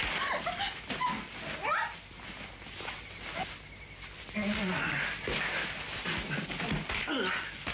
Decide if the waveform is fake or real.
real